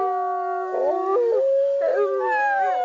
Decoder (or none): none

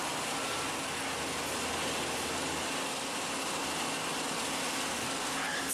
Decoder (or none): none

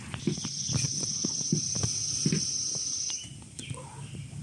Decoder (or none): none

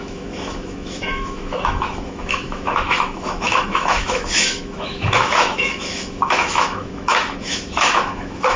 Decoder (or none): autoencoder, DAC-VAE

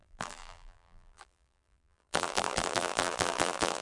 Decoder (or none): vocoder, BigVGAN v2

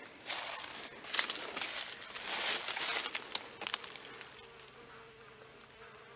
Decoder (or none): none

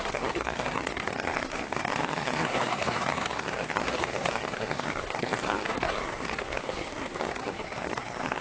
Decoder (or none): codec, SNAC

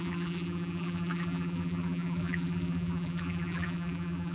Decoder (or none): vocoder, BigVGAN v2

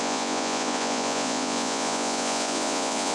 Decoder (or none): vocoder, Vocos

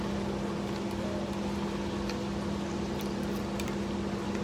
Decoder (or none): none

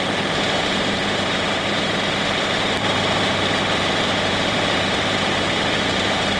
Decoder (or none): vocoder, BigVGAN v2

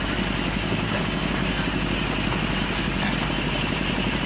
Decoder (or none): none